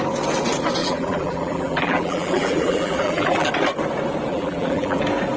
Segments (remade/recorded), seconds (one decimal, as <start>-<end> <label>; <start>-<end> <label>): 0.0-0.8 recorded; 0.8-3.5 remade; 3.5-4.3 recorded; 4.3-5.0 remade; 5.0-5.4 recorded